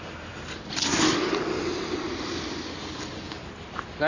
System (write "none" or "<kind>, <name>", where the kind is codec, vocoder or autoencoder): none